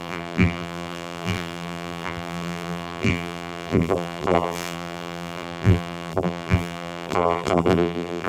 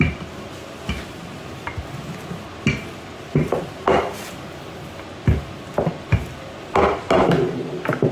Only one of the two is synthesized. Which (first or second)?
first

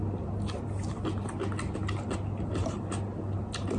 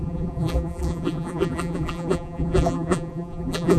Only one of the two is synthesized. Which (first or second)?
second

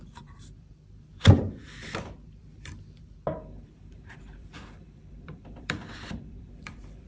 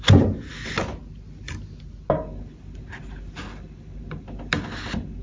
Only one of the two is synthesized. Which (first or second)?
first